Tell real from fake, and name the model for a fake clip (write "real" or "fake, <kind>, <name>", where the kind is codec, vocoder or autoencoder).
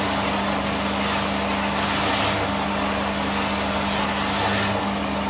real